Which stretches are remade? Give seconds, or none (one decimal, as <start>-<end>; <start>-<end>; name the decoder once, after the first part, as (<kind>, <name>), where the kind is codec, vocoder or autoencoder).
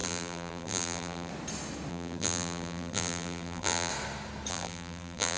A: 0.0-1.3 (vocoder, BigVGAN v2); 1.9-3.9; 4.5-5.4